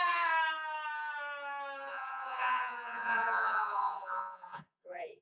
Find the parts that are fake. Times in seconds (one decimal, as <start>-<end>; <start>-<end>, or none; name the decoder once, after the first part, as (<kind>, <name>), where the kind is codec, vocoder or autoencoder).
1.9-5.2 (vocoder, Vocos)